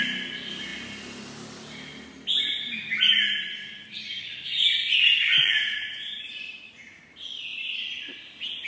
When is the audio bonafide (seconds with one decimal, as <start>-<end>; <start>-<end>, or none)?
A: 0.0-5.4; 7.0-8.7